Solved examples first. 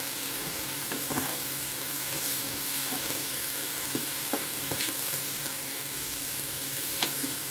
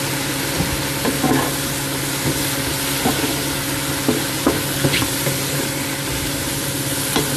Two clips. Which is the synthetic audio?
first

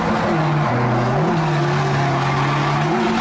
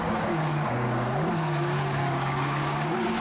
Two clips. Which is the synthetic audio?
second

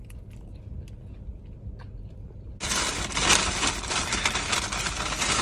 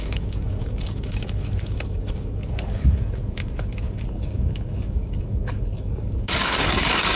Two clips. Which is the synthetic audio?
second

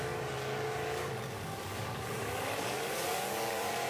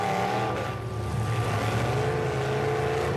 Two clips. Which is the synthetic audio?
first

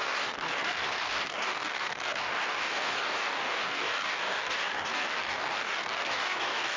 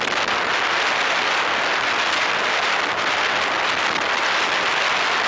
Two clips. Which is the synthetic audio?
first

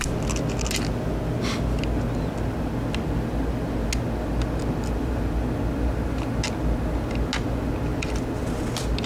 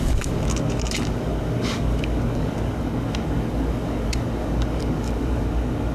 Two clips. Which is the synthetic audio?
second